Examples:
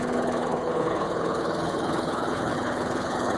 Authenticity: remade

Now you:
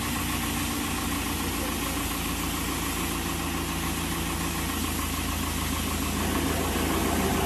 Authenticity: recorded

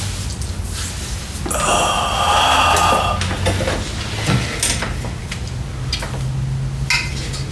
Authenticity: recorded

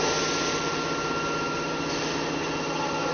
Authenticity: recorded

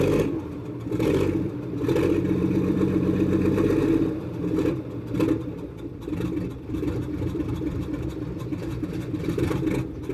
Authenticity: remade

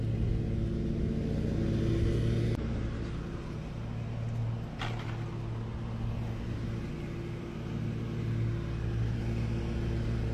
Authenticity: recorded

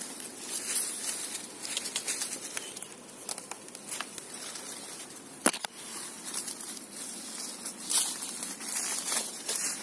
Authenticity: recorded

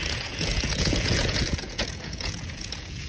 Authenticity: remade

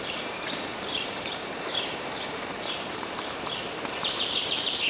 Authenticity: remade